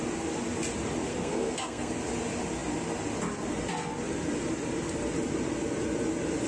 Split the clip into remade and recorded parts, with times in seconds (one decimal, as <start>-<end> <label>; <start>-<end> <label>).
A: 0.0-1.1 recorded; 1.1-1.9 remade; 1.9-6.5 recorded